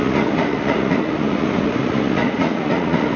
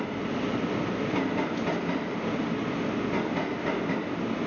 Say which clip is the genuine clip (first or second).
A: second